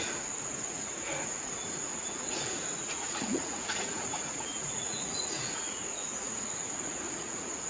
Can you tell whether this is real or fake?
fake